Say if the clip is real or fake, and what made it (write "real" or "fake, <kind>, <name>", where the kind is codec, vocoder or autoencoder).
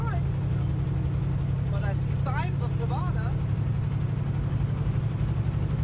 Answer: real